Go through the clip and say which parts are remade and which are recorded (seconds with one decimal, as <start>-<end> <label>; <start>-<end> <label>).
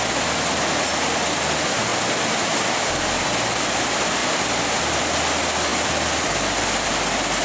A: 0.0-7.4 recorded